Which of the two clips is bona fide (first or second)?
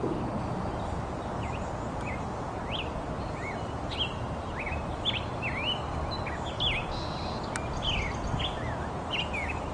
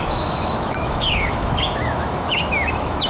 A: first